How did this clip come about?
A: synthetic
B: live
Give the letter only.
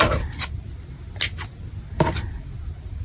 B